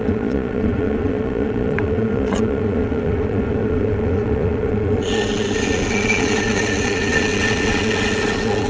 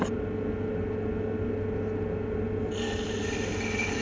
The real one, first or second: second